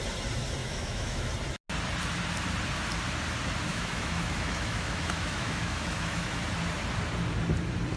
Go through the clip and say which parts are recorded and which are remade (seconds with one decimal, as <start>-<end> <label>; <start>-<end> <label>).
0.0-0.6 recorded; 0.6-1.3 remade; 1.3-3.7 recorded; 3.7-6.4 remade; 6.4-8.0 recorded